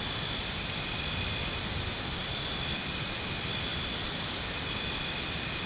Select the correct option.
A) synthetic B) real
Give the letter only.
B